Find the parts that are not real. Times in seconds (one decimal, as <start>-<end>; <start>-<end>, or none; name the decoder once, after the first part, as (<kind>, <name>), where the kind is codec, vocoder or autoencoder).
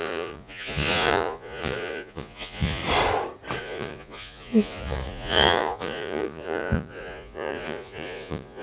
0.0-2.8 (vocoder, Vocos); 3.6-8.6